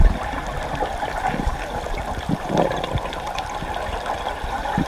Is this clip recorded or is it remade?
recorded